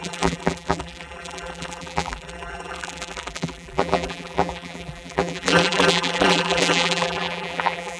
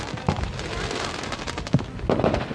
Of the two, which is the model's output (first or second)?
first